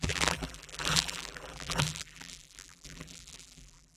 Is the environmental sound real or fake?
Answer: fake